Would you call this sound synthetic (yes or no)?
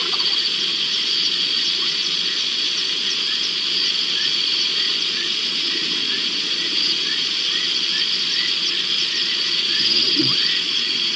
yes